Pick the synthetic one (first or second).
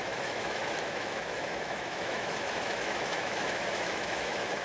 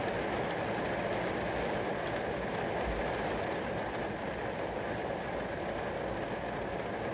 first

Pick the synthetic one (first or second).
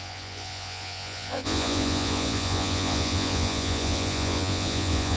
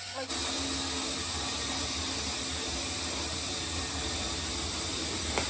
first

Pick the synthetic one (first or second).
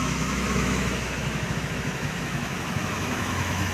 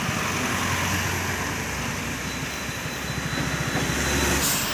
first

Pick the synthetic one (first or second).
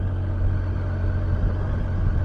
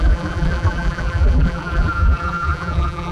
second